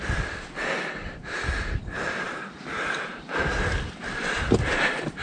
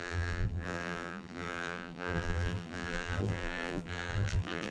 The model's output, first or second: second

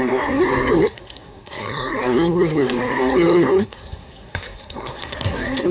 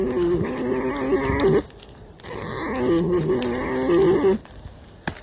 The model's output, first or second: first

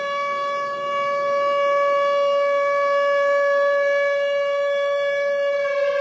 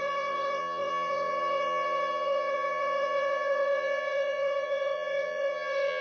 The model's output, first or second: second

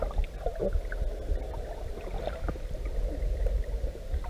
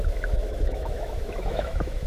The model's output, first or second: second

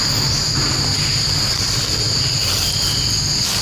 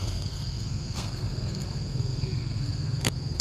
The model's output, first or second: second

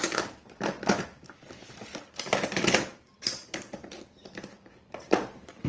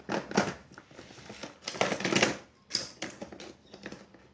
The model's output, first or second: first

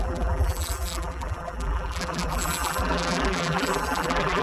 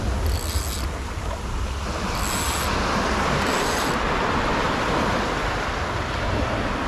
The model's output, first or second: first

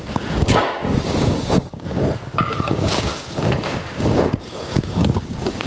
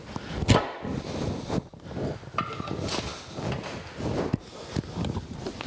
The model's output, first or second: first